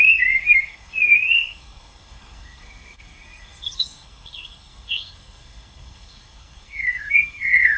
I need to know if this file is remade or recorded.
remade